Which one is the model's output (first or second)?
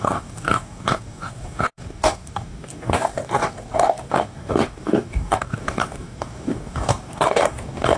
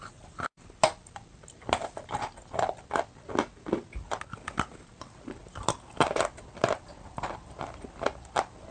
first